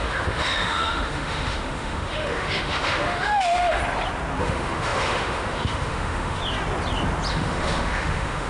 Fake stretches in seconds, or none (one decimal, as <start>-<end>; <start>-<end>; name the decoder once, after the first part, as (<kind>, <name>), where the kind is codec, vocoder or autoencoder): 0.0-3.8 (autoencoder, DAC-VAE); 4.4-6.4; 7.3-8.5